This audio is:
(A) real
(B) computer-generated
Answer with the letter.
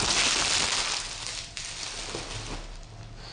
A